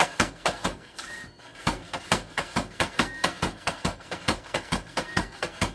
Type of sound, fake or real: fake